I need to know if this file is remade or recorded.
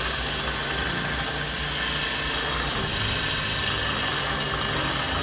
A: recorded